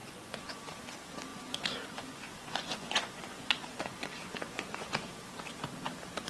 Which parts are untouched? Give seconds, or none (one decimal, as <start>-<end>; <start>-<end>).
0.6-1.3; 5.1-6.3